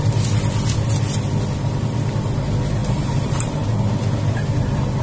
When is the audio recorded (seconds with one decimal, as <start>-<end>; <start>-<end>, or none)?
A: 0.0-2.8; 3.5-5.0